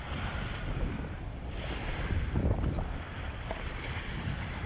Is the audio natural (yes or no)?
no